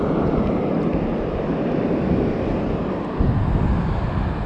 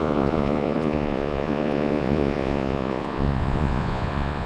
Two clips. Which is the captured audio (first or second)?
first